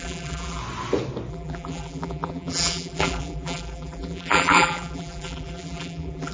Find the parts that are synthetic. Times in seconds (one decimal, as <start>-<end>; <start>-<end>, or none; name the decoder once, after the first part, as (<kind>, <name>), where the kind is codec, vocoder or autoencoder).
0.0-0.6 (vocoder, BigVGAN v2); 1.3-6.3

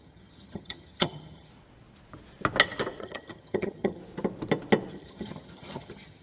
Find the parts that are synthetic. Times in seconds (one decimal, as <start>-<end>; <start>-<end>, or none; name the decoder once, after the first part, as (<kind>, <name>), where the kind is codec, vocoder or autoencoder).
0.0-1.5 (vocoder, HiFi-GAN); 3.0-4.0; 4.9-6.2

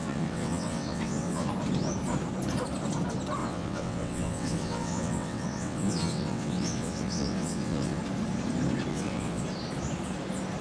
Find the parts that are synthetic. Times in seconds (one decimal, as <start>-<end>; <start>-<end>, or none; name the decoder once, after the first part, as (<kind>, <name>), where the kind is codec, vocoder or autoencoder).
0.0-1.5 (vocoder, WaveNeXt); 3.4-8.0; 8.9-9.4

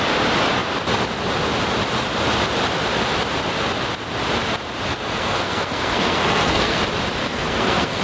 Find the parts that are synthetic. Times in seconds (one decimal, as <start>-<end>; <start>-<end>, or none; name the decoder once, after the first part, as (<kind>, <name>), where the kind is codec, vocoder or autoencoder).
4.9-6.8 (codec, SNAC); 7.2-8.0